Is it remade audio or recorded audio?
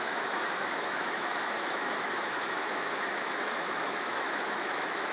remade